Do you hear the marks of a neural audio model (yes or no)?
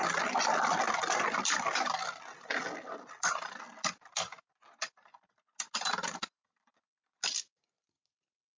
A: no